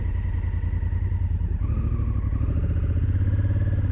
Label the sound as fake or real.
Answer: real